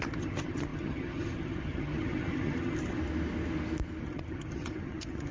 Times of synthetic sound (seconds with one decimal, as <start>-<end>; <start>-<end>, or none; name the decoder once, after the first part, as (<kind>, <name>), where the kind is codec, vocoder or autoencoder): 0.0-3.0 (vocoder, HiFi-GAN); 4.0-5.3